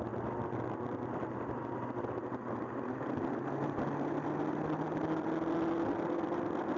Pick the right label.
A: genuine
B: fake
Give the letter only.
A